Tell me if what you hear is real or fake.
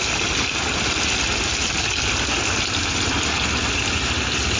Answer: real